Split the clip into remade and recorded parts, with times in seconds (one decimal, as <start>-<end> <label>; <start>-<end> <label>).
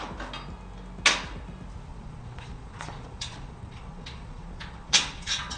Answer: 0.0-1.9 recorded; 1.9-5.6 remade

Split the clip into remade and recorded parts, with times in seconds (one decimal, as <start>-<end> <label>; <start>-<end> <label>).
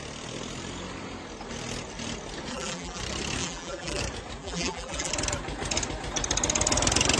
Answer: 0.0-2.5 recorded; 2.5-3.0 remade; 3.0-3.4 recorded; 3.4-4.0 remade; 4.0-4.4 recorded; 4.4-5.1 remade; 5.1-7.2 recorded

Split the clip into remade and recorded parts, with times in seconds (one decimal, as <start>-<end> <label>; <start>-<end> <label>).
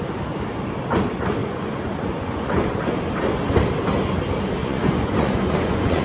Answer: 0.0-1.4 recorded; 1.4-2.9 remade; 2.9-4.6 recorded; 4.6-6.0 remade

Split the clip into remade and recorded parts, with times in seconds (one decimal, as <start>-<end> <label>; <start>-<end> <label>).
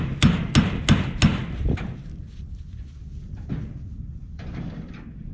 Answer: 0.0-5.3 recorded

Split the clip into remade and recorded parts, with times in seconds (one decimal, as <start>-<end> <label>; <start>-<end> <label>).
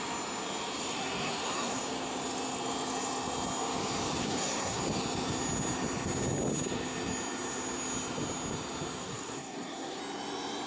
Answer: 0.0-0.9 recorded; 0.9-1.8 remade; 1.8-4.2 recorded; 4.2-4.8 remade; 4.8-9.0 recorded; 9.0-10.0 remade; 10.0-10.7 recorded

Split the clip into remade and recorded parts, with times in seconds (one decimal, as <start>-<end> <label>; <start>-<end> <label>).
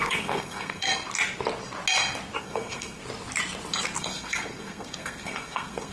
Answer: 0.0-0.9 remade; 0.9-2.4 recorded; 2.4-3.0 remade; 3.0-4.0 recorded; 4.0-5.9 remade